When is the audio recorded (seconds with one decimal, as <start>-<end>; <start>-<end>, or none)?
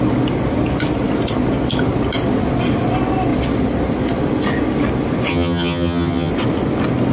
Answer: 0.0-5.3; 6.3-7.1